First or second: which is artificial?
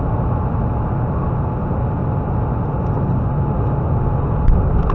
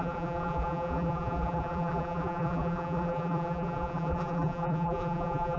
second